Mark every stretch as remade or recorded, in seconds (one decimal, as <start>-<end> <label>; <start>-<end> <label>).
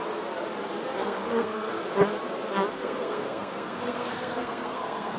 0.0-1.0 recorded; 1.0-1.8 remade; 1.8-2.7 recorded; 2.7-5.2 remade